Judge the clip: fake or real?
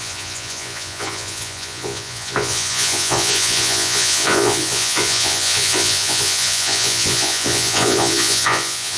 fake